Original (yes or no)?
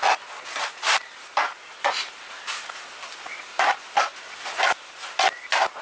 yes